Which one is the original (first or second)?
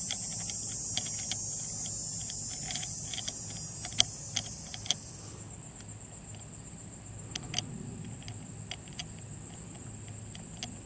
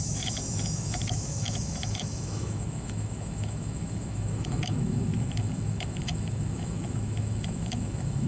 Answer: first